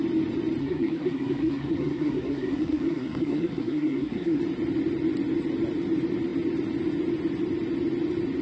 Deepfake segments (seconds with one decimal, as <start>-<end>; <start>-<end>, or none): 0.6-4.4